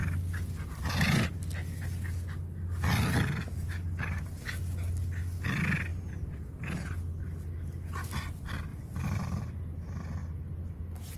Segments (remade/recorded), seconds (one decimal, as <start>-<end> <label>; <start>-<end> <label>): 0.0-8.7 recorded; 8.7-9.4 remade; 9.4-10.2 recorded; 10.2-10.7 remade; 10.7-11.2 recorded